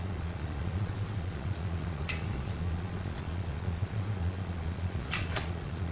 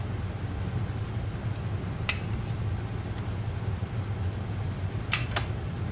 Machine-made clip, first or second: first